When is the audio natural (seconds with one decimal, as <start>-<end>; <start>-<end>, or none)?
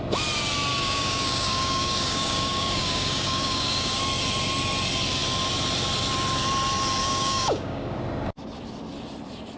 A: 0.0-0.7; 4.0-7.0; 8.0-9.6